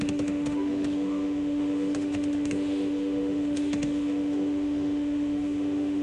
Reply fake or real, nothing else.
fake